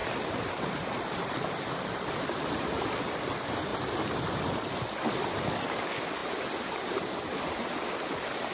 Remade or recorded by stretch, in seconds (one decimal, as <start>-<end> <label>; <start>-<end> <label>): 0.0-2.9 remade; 2.9-3.7 recorded; 3.7-4.2 remade; 4.2-6.2 recorded; 6.2-7.0 remade; 7.0-8.5 recorded